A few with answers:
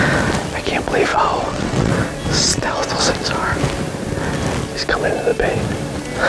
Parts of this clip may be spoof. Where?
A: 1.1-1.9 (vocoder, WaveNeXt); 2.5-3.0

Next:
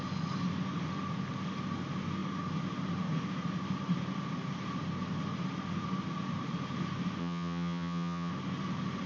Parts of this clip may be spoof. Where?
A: 7.2-8.3 (vocoder, HiFi-GAN)

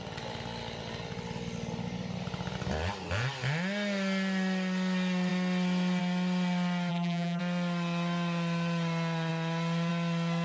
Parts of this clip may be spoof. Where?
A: 6.9-7.4 (vocoder, BigVGAN v2)

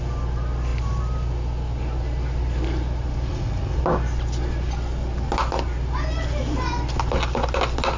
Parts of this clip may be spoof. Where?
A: 3.3-3.8 (vocoder, Vocos)

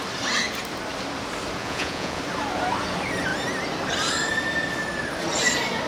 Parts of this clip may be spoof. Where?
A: 1.6-2.2 (vocoder, Vocos)